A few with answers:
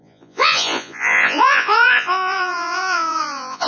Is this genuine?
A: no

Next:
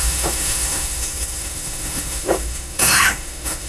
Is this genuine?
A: no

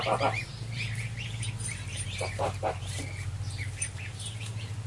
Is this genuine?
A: no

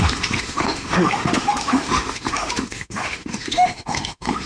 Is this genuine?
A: no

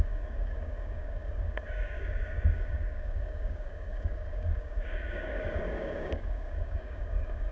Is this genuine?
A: no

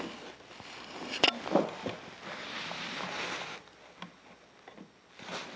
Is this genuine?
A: yes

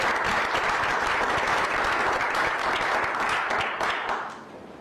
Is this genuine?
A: yes